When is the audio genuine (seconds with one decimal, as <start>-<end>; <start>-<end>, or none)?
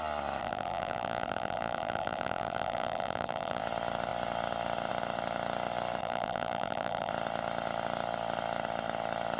0.0-0.4; 3.6-6.0; 7.1-9.4